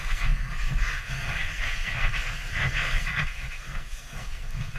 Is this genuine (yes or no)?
no